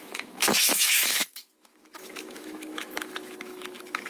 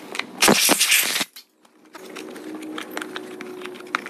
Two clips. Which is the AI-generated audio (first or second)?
first